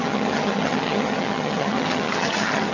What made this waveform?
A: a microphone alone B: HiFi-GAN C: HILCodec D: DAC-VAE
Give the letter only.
B